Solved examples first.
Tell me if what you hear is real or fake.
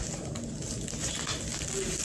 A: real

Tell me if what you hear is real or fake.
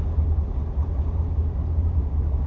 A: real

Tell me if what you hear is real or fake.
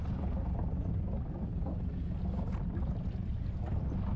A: real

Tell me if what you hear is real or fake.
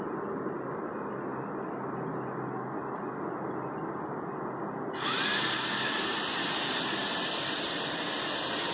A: real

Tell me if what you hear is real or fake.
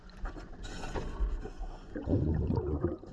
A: fake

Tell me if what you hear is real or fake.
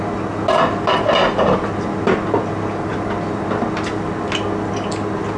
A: real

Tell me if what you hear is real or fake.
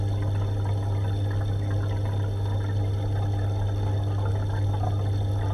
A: real